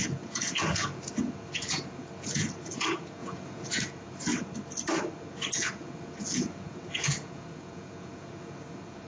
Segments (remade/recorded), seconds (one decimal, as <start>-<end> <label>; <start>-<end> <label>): 0.0-4.3 remade; 4.3-5.3 recorded; 5.3-9.1 remade